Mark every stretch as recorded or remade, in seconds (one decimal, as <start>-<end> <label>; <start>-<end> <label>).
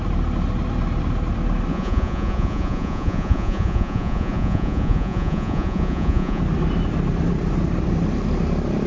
0.0-1.7 recorded; 1.7-6.4 remade; 6.4-8.9 recorded